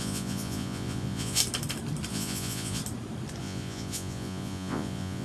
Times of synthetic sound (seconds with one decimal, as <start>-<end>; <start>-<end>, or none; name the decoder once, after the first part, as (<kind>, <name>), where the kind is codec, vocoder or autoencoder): 0.0-1.4 (vocoder, Vocos); 2.1-2.8; 3.4-5.2